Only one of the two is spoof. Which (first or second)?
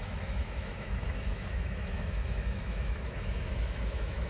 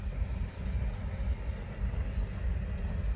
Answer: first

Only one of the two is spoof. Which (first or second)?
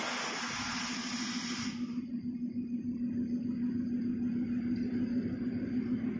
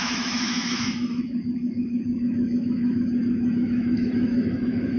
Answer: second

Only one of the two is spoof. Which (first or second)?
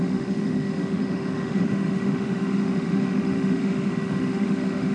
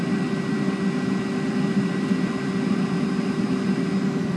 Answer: first